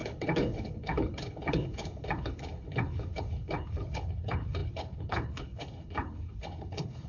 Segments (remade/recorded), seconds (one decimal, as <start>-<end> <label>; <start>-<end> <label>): 0.0-7.1 remade